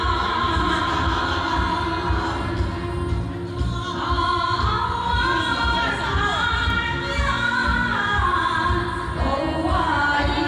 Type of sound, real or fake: real